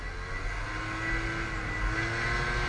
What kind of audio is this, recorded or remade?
recorded